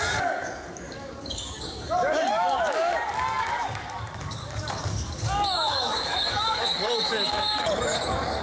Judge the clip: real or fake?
fake